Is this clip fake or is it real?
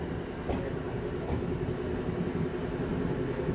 real